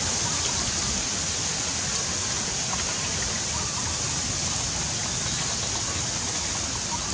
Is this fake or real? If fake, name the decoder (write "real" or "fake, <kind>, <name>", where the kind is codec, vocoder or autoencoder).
real